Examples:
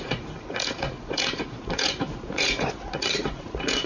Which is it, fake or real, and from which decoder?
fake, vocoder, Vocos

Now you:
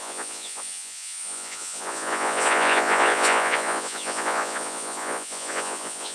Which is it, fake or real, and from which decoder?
fake, vocoder, Vocos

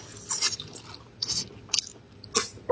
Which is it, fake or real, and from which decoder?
real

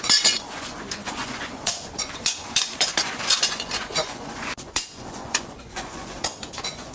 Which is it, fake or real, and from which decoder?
fake, vocoder, Vocos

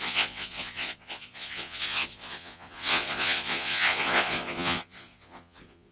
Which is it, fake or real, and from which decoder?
fake, vocoder, Vocos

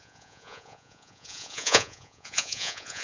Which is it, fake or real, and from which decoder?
fake, vocoder, Vocos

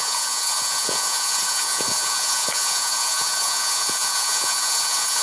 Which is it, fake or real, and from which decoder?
fake, vocoder, Vocos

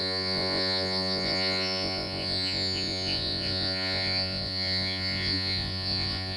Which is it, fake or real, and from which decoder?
fake, vocoder, Vocos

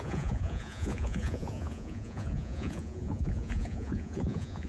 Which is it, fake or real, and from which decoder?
fake, vocoder, Vocos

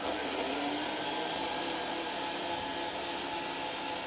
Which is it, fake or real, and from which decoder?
real